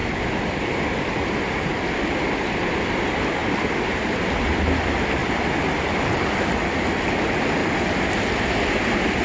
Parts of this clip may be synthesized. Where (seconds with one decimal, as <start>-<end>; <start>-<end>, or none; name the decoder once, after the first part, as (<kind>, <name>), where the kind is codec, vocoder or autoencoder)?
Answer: none